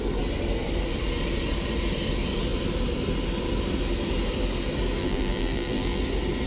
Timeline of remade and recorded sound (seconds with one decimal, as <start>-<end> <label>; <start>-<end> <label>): 0.0-5.0 recorded; 5.0-6.0 remade; 6.0-6.5 recorded